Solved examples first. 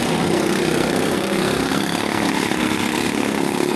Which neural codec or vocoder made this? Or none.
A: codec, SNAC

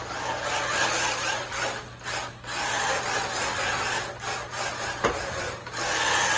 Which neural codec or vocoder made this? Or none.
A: none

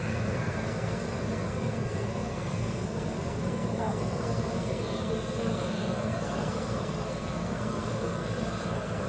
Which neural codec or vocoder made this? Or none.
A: codec, SNAC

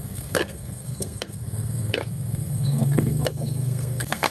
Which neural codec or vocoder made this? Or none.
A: codec, SNAC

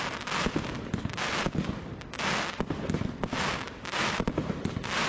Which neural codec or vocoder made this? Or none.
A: none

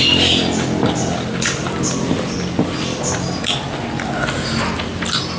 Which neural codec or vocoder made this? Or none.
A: none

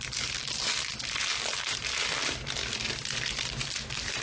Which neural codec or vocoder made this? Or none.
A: none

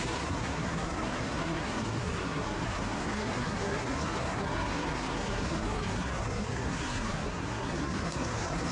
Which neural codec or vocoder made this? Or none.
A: codec, SNAC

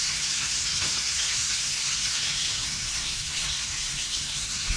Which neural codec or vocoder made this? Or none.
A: codec, SNAC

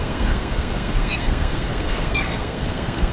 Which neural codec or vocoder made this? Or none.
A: codec, SNAC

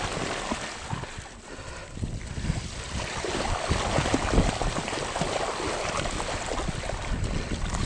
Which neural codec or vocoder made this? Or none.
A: none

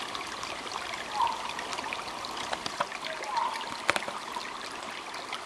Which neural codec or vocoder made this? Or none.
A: none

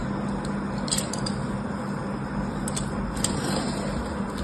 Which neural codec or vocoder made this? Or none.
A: none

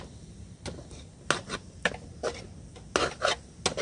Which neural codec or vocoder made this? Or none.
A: none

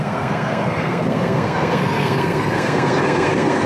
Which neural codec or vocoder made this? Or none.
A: codec, SNAC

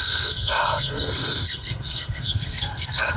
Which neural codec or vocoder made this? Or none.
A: codec, SNAC